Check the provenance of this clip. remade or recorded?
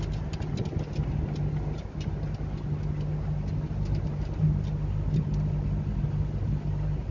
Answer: recorded